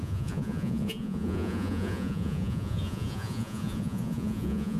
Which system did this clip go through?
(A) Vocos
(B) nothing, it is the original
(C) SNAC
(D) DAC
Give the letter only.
A